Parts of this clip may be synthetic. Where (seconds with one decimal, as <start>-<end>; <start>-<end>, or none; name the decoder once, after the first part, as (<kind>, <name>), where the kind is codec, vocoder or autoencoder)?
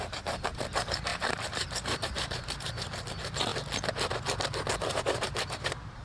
0.0-3.5 (vocoder, BigVGAN v2); 4.9-6.0